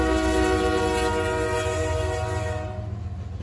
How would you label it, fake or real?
real